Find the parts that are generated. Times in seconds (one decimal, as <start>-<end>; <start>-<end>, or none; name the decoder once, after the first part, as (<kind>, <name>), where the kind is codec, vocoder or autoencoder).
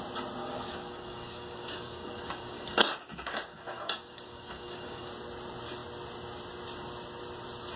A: 0.4-5.1 (codec, DAC)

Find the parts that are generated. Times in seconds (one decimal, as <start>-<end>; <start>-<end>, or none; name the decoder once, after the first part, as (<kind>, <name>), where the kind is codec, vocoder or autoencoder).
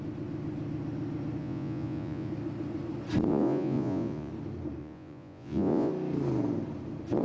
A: 1.4-2.3 (vocoder, Vocos); 3.3-4.3; 4.8-5.9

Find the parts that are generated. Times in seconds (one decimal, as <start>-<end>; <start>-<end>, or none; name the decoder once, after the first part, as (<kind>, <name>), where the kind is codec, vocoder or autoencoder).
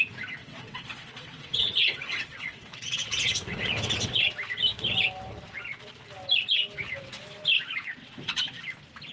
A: 0.4-4.2 (vocoder, WaveNeXt); 8.0-8.6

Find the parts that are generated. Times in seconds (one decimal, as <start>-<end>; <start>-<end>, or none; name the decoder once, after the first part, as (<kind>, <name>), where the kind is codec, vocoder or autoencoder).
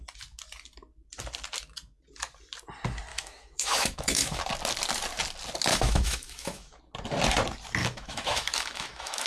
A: 3.1-4.4 (autoencoder, DAC-VAE); 5.7-6.8; 7.8-9.3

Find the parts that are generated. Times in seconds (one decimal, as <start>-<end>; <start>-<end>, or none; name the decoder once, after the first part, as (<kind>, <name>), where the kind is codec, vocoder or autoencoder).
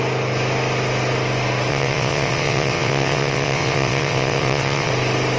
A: 1.7-4.9 (vocoder, WaveNeXt)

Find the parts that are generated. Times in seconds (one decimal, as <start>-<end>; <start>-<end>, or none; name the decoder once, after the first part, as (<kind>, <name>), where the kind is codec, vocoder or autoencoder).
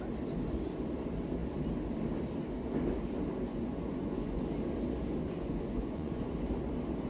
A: 3.5-4.4 (vocoder, Vocos); 5.2-6.3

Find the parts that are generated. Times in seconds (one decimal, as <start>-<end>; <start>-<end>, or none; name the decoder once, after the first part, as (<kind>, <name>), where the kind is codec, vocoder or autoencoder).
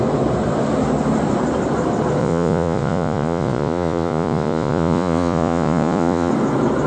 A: 2.2-6.3 (vocoder, Vocos)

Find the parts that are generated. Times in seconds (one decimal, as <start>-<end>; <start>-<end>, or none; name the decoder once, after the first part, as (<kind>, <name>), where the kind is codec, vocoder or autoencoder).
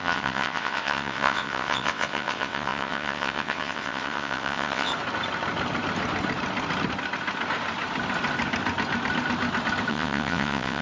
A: 0.0-4.9 (vocoder, WaveNeXt); 9.9-10.8